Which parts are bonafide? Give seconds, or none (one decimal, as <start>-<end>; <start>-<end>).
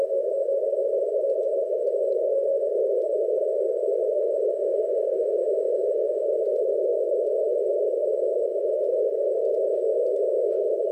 9.9-10.5